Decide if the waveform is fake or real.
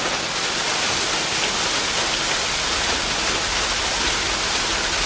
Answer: real